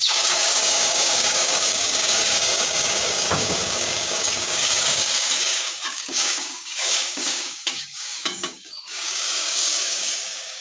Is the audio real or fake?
fake